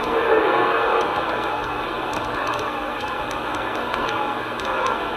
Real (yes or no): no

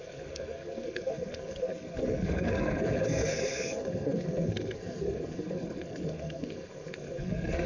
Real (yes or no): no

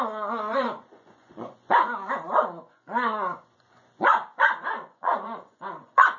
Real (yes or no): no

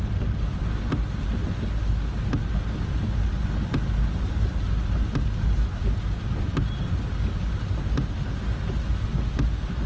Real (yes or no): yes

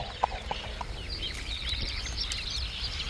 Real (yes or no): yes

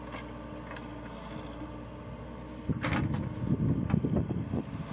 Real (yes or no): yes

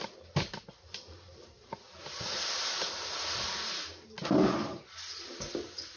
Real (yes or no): yes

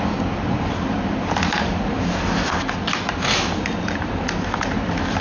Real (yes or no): yes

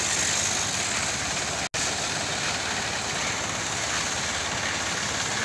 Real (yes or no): yes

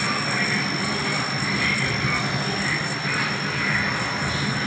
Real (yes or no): yes